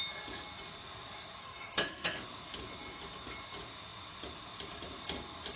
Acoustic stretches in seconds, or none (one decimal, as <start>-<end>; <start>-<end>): 0.0-1.4; 2.2-5.6